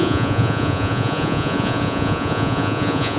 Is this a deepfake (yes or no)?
yes